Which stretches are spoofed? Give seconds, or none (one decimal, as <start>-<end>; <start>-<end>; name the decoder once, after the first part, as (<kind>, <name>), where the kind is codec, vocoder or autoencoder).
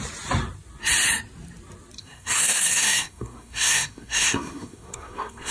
2.0-5.5 (codec, SNAC)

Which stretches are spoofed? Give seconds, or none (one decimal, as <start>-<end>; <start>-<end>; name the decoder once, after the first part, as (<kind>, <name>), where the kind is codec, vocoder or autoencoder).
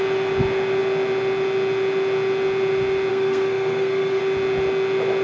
3.1-4.2 (codec, SNAC)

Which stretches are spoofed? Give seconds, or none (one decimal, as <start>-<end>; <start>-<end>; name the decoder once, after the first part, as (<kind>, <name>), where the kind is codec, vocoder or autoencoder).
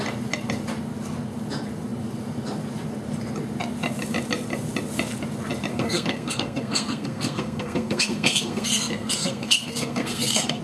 5.7-10.6 (codec, SNAC)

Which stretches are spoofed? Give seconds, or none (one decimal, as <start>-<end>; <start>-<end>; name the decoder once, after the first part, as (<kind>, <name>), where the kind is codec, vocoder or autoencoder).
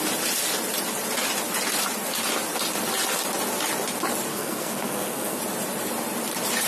4.3-5.4 (codec, SNAC)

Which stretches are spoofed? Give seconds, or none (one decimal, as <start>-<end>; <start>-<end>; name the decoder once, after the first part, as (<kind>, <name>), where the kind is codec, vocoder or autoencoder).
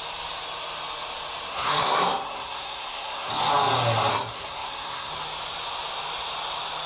1.5-3.3 (codec, SNAC); 4.1-5.1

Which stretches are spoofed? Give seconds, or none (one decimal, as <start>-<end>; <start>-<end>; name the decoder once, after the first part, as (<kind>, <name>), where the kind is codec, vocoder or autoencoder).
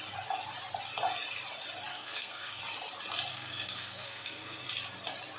1.9-2.6 (codec, SNAC); 3.3-4.7